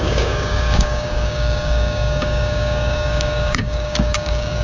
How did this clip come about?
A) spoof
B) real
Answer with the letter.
A